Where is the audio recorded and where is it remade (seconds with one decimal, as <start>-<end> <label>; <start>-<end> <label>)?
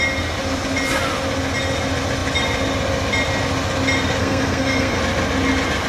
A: 0.0-4.2 recorded; 4.2-5.0 remade; 5.0-5.9 recorded